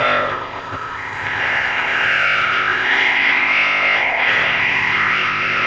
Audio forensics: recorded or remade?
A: remade